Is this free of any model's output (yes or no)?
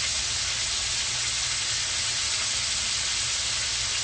yes